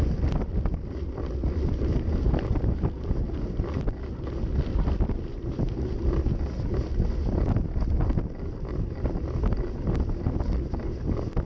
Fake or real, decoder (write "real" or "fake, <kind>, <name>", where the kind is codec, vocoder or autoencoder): real